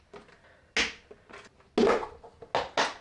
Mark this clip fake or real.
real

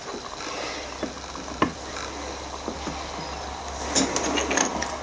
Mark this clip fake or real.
real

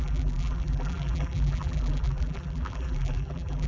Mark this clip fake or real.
fake